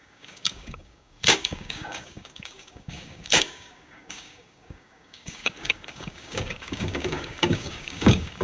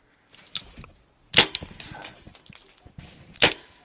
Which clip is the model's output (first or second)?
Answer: first